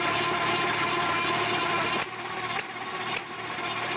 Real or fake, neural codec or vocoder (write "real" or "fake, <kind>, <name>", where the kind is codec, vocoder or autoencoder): real